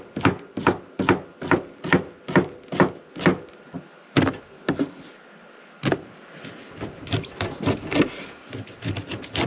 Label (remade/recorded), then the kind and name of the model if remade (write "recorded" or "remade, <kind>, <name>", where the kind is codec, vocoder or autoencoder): recorded